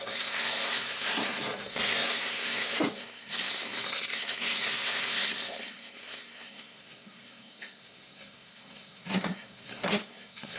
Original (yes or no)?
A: no